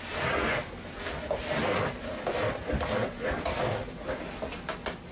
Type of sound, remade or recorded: recorded